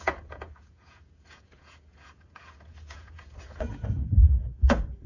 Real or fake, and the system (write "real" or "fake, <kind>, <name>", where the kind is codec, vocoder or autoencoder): fake, vocoder, Vocos